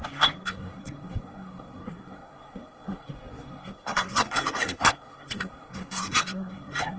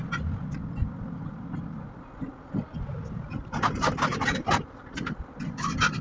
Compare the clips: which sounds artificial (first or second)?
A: first